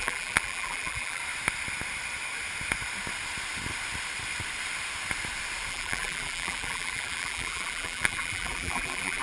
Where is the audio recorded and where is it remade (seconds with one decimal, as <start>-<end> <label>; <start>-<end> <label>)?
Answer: 0.0-1.2 remade; 1.2-5.7 recorded; 5.7-9.2 remade